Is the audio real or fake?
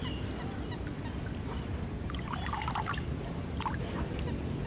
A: real